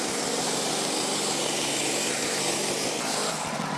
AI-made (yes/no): no